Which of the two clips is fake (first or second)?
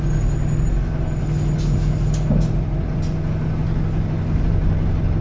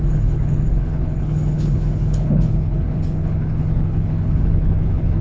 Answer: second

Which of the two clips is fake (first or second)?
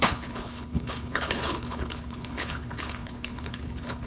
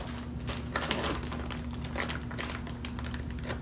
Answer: first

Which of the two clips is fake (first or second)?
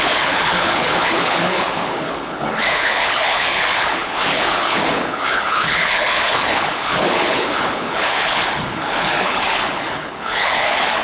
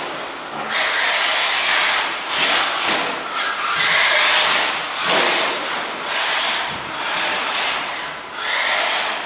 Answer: first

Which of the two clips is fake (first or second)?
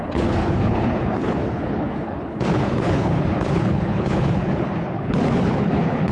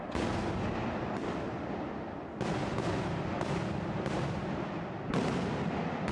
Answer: first